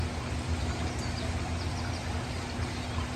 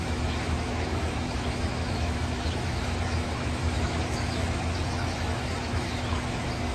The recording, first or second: first